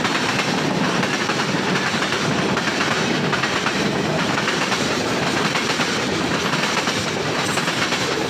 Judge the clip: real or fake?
fake